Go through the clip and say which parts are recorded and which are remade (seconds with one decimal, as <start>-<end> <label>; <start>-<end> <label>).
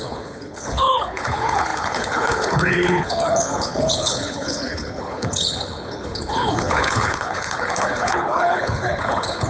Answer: 0.0-9.5 remade